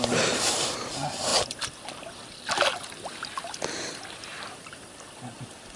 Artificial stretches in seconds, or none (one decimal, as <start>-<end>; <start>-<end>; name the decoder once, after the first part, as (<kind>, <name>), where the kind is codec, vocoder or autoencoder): none